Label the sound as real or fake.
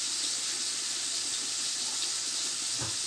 real